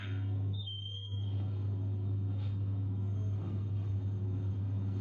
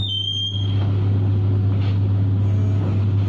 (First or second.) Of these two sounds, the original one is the second